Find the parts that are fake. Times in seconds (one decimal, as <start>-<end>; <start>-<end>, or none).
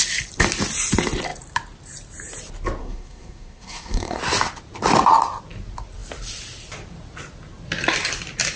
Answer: 2.8-4.2